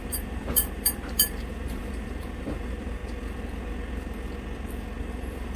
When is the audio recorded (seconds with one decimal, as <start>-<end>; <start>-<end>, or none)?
3.0-5.0